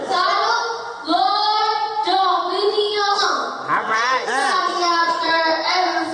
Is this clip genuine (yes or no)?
no